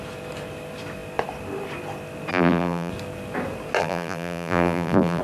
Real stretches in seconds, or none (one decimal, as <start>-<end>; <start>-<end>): 0.0-2.3; 2.9-3.8

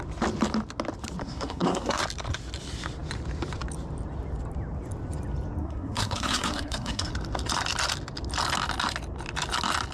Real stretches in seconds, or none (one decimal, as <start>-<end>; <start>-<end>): 0.0-1.2; 2.0-5.6; 7.1-9.9

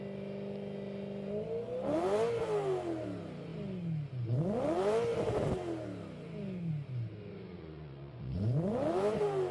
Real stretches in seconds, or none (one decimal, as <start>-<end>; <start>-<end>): 0.0-7.5; 8.4-9.5

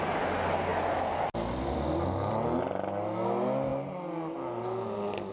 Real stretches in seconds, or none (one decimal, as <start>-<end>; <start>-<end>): 0.0-5.3